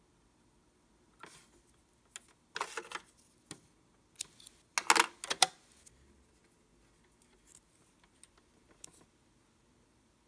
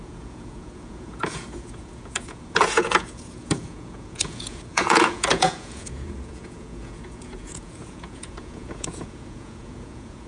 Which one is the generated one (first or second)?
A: second